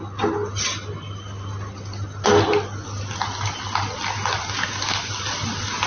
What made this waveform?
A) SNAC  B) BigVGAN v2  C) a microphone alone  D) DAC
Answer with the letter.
C